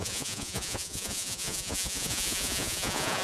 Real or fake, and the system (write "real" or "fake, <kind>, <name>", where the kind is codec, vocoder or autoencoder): fake, vocoder, Vocos